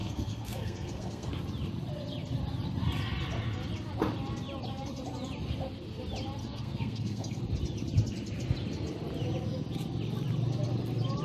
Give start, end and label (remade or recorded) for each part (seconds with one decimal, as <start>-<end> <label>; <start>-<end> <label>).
0.0-1.3 remade; 1.3-6.4 recorded; 6.4-7.4 remade; 7.4-11.2 recorded